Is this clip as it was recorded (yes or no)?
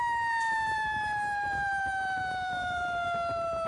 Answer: no